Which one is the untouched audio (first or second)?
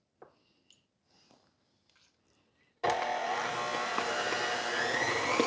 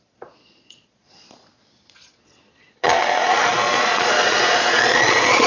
first